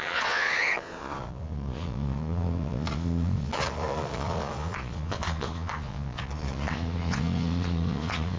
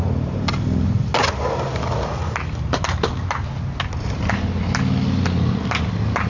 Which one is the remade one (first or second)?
first